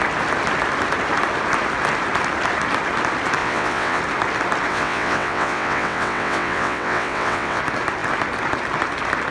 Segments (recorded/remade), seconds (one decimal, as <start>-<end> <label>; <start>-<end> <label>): 0.0-3.4 recorded; 3.4-4.0 remade; 4.0-4.7 recorded; 4.7-7.6 remade; 7.6-9.3 recorded